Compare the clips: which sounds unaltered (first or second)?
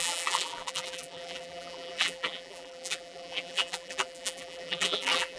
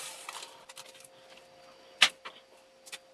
second